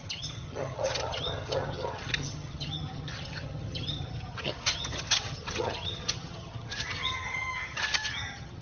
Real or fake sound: fake